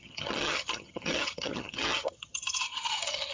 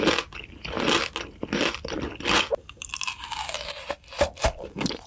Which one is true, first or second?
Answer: second